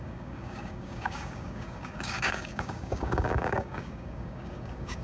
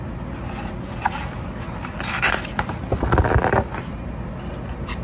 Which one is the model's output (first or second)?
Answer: first